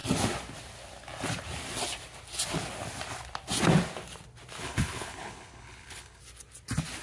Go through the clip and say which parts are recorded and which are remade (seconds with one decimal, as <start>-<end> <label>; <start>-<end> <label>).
0.0-4.6 recorded; 4.6-6.2 remade; 6.2-7.0 recorded